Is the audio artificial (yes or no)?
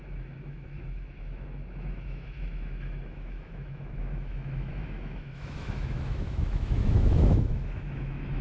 yes